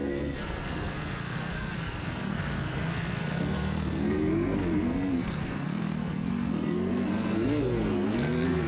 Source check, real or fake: fake